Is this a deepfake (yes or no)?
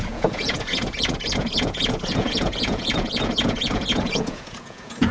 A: yes